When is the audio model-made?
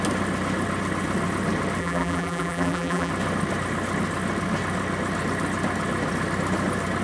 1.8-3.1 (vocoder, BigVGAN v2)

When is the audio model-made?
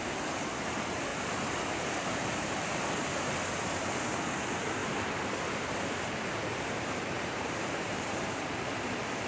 1.1-3.3 (vocoder, BigVGAN v2); 4.8-8.3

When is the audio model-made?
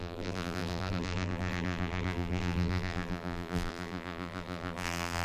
0.0-5.2 (vocoder, BigVGAN v2)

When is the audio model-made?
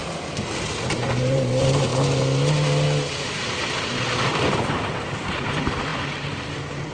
0.8-1.9 (vocoder, BigVGAN v2); 3.1-6.9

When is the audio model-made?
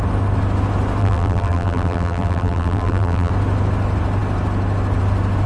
1.0-3.3 (vocoder, BigVGAN v2)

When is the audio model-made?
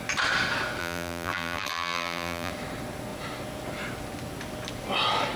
0.8-2.5 (vocoder, BigVGAN v2)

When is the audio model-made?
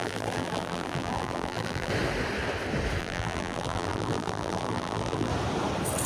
0.0-1.9 (vocoder, BigVGAN v2); 3.0-5.3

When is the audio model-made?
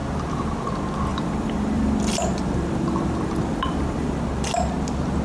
1.1-4.2 (vocoder, BigVGAN v2)